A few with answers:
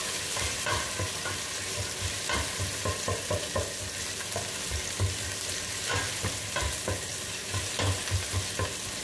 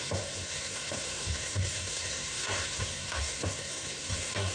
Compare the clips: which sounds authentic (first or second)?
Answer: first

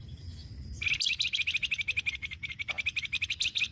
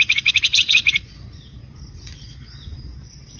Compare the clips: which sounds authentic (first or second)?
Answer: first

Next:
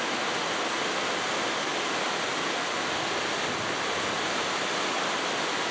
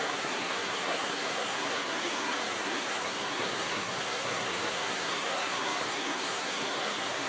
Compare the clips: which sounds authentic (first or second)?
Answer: first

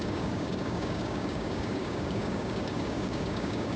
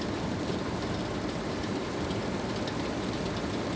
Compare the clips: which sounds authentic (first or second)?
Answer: second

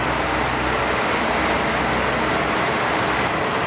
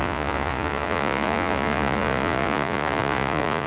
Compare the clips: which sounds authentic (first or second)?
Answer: first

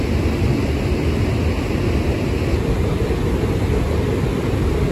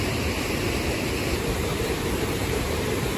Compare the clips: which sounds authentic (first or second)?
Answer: first